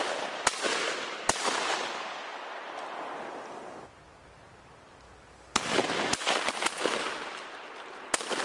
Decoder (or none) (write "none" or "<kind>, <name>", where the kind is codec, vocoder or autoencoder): none